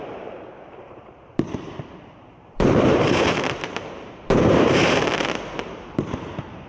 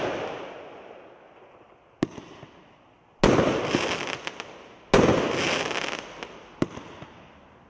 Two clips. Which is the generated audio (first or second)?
first